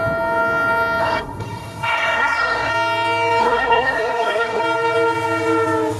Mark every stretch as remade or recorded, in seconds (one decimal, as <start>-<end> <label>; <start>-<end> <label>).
0.0-1.0 recorded; 1.0-2.7 remade; 2.7-3.4 recorded; 3.4-4.6 remade; 4.6-6.0 recorded